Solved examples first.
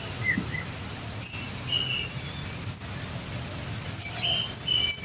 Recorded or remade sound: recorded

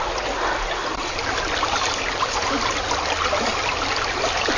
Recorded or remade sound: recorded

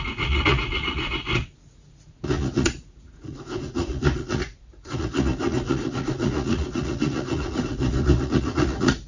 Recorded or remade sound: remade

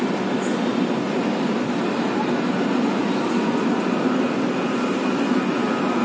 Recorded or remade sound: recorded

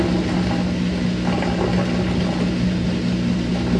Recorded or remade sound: recorded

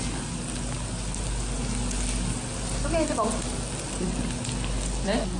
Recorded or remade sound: recorded